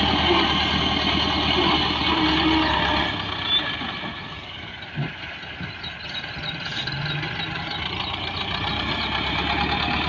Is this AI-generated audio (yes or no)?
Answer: no